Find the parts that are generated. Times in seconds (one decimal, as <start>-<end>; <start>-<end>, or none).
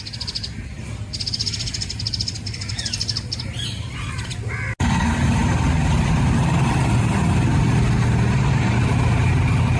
none